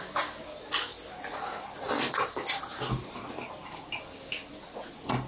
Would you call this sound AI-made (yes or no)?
no